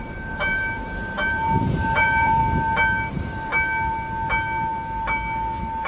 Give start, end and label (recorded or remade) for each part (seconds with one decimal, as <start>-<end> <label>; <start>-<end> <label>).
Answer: 0.0-2.4 remade; 2.4-3.1 recorded; 3.1-3.5 remade; 3.5-5.9 recorded